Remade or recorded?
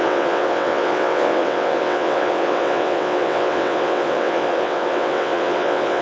remade